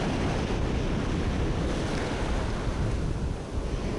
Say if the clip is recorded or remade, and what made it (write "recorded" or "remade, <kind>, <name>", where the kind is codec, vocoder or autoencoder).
recorded